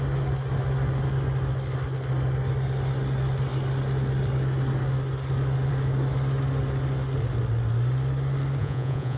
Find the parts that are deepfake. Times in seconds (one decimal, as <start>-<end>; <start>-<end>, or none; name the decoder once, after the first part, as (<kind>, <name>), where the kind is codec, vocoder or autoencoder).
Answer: 8.6-9.2 (vocoder, Vocos)